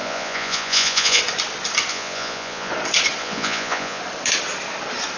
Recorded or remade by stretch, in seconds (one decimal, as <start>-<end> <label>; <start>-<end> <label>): 0.0-1.2 remade; 1.2-1.9 recorded; 1.9-2.7 remade; 2.7-3.2 recorded; 3.2-4.0 remade; 4.0-5.2 recorded